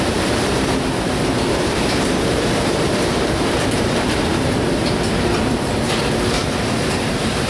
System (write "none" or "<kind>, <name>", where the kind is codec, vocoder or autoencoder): vocoder, BigVGAN v2